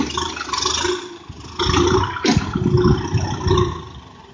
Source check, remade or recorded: recorded